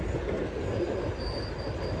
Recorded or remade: recorded